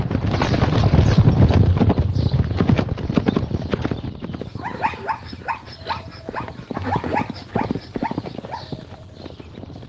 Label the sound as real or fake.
real